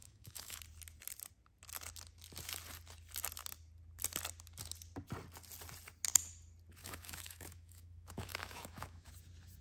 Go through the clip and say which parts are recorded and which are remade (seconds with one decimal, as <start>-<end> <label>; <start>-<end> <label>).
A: 0.0-0.6 remade; 0.6-6.8 recorded; 6.8-9.1 remade; 9.1-9.6 recorded